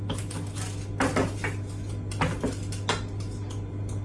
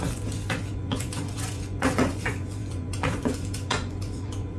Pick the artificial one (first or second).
second